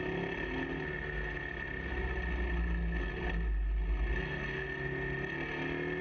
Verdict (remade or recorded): recorded